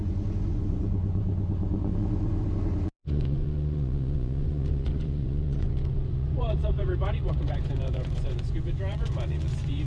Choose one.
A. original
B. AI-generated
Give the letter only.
B